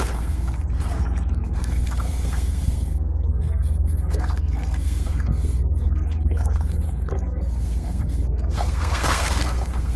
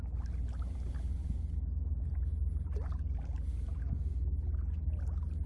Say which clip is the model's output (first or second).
first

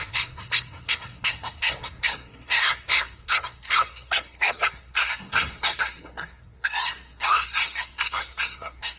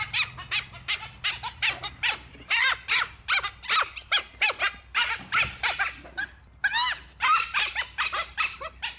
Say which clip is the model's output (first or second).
first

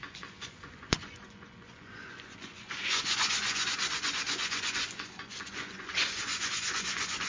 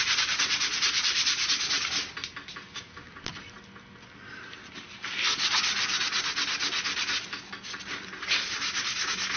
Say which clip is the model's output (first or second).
first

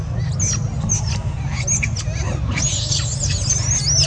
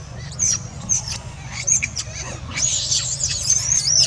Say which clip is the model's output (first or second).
second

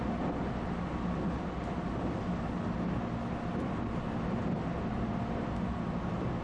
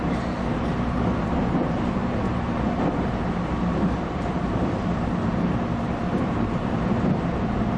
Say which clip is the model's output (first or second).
second